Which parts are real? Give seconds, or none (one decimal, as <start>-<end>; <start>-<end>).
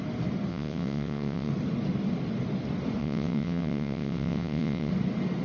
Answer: 0.0-0.5; 1.5-3.0; 4.9-5.4